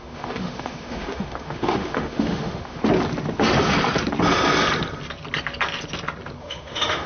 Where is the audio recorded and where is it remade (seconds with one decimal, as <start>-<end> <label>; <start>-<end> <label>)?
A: 0.0-2.8 remade; 2.8-6.4 recorded; 6.4-7.1 remade